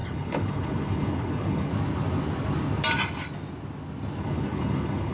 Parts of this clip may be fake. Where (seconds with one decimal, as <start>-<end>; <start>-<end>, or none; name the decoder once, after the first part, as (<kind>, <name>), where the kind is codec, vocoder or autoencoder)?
0.0-1.7 (codec, HILCodec); 4.2-5.1